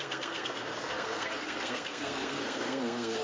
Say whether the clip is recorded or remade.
remade